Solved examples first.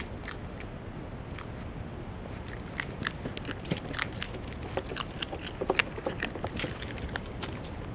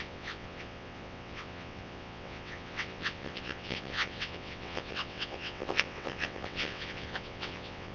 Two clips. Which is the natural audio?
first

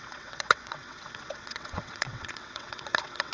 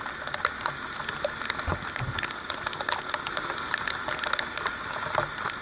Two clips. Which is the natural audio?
second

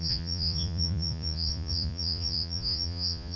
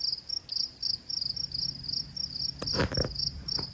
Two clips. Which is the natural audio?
second